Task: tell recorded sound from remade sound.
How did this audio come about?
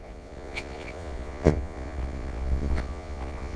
remade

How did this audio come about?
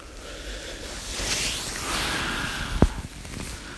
recorded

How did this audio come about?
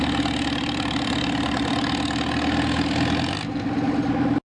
recorded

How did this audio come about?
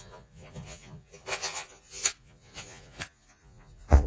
remade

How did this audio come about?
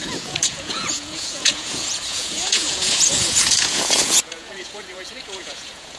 remade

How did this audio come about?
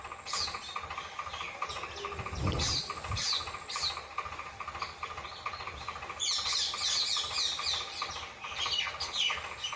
recorded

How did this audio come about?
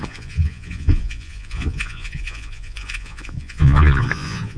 remade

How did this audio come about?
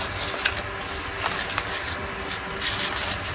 recorded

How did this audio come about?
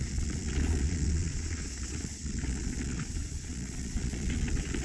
remade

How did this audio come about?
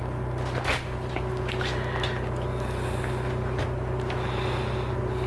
recorded